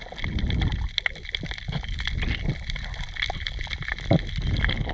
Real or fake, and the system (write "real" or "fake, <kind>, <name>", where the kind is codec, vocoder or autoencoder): real